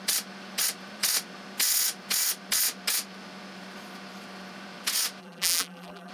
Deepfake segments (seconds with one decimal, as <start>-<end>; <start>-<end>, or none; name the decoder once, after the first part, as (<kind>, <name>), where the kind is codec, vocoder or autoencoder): 5.2-6.1 (vocoder, BigVGAN v2)